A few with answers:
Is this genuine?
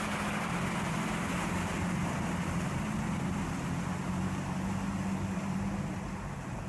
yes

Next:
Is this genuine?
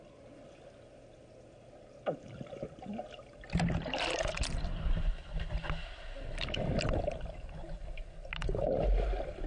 yes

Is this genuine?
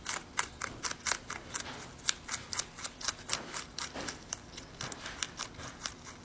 yes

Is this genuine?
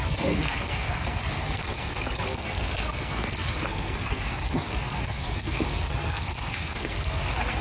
no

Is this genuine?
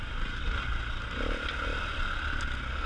yes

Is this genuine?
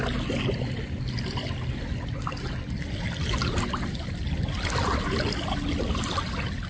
yes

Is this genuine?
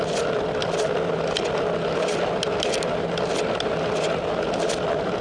yes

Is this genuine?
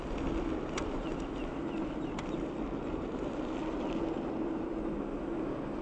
yes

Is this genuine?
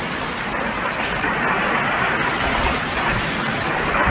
yes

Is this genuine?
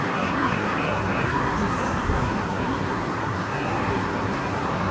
no